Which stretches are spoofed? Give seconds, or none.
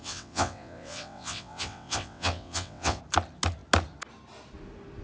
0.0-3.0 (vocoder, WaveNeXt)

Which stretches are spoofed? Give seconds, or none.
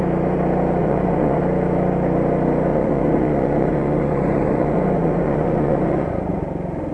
0.8-1.4 (vocoder, Vocos); 2.7-6.4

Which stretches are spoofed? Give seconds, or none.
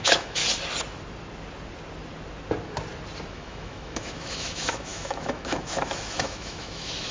0.0-0.4 (autoencoder, DAC-VAE); 3.3-7.1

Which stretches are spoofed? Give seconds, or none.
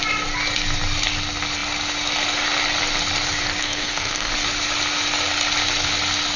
3.6-4.3 (codec, SNAC)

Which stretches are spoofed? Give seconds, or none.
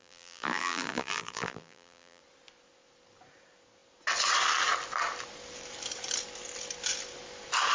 0.0-2.2 (vocoder, BigVGAN v2)